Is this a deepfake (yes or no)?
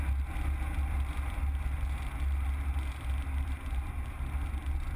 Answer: no